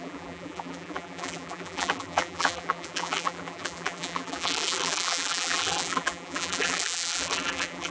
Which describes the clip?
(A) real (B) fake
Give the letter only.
B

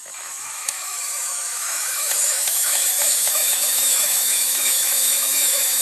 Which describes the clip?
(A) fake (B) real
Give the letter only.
A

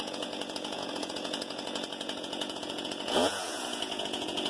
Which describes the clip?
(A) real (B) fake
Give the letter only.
B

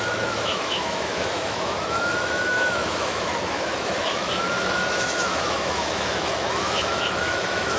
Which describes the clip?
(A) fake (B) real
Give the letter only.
A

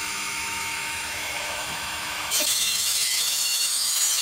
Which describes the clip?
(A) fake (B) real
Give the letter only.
A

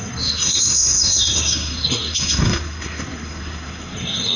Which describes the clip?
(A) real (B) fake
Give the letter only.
B